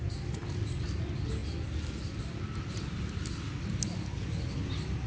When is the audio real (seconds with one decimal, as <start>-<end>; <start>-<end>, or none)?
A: 0.0-5.1